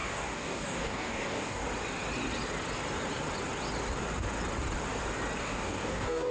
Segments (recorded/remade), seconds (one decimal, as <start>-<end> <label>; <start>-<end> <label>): 0.0-1.6 remade; 1.6-5.4 recorded; 5.4-6.3 remade